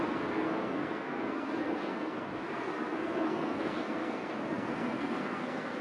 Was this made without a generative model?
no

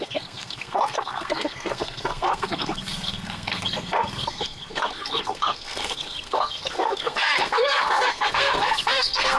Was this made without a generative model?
no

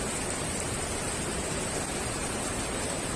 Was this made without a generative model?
yes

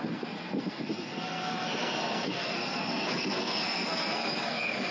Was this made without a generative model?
no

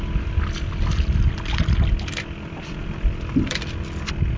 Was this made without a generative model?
yes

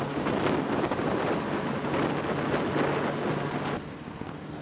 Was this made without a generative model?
yes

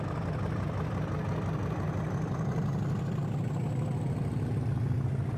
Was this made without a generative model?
yes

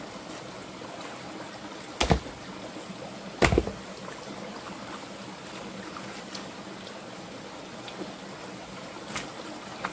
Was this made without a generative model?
yes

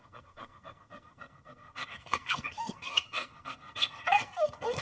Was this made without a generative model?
no